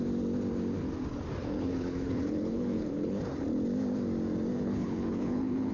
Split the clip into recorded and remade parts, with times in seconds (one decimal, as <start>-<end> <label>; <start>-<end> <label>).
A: 0.0-1.4 recorded; 1.4-3.2 remade; 3.2-4.5 recorded; 4.5-5.7 remade

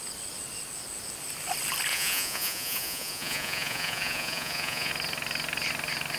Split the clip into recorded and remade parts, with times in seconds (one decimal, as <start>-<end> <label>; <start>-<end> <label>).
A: 0.0-1.9 recorded; 1.9-4.9 remade; 4.9-6.2 recorded